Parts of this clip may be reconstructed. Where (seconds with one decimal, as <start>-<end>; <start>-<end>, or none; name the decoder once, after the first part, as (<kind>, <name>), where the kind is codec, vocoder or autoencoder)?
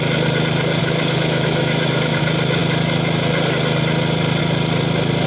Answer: 0.8-2.2 (autoencoder, DAC-VAE)